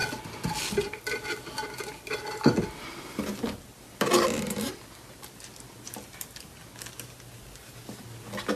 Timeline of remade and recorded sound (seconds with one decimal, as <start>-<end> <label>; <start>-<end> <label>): 0.0-8.6 recorded